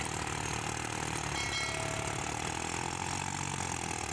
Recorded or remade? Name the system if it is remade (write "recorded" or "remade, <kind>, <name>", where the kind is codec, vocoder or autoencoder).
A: recorded